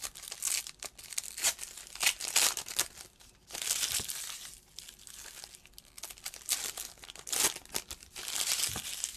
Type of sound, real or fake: real